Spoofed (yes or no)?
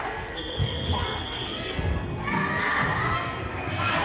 yes